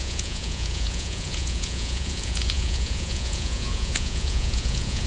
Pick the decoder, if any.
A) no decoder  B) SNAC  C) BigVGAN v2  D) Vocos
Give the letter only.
D